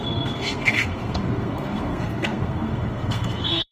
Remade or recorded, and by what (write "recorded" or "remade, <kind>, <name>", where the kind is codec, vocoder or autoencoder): remade, codec, SNAC